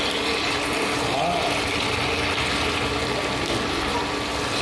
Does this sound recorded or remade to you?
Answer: recorded